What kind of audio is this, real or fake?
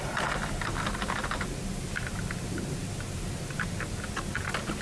real